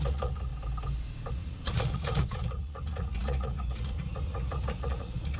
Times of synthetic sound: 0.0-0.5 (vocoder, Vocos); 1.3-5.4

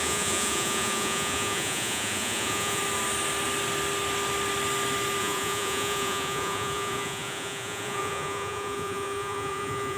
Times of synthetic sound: 0.0-2.8 (vocoder, Vocos); 5.2-10.0

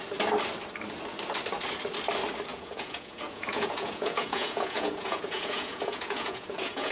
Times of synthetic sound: 2.5-6.9 (vocoder, Vocos)